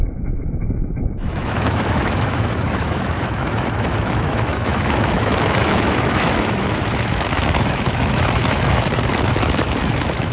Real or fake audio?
fake